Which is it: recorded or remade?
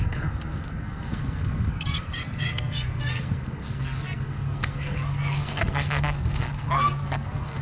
remade